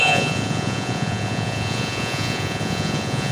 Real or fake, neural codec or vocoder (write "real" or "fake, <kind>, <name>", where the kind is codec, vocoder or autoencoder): fake, vocoder, Vocos